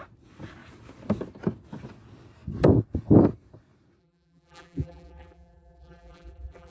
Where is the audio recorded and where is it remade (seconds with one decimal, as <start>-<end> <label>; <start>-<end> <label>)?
0.0-4.0 recorded; 4.0-6.7 remade